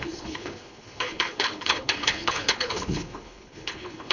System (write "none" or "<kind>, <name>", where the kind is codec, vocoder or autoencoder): codec, HILCodec